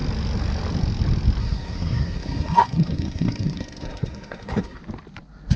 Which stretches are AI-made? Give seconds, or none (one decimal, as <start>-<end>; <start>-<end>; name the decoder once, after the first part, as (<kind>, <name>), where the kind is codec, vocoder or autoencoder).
1.4-4.8 (codec, SNAC)